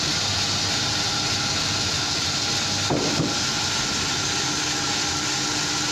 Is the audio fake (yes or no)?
no